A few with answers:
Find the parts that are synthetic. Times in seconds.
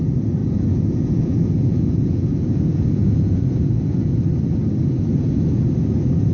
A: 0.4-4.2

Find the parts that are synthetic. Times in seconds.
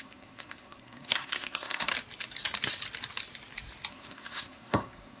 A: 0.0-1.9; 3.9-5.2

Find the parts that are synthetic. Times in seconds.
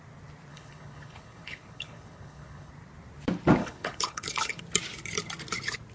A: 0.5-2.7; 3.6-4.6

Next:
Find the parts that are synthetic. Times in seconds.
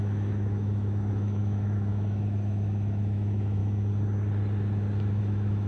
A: 0.0-3.6; 5.2-5.7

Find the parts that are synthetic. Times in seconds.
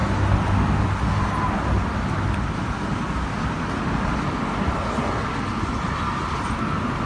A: none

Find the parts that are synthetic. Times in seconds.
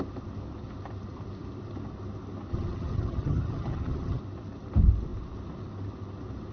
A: 2.5-4.2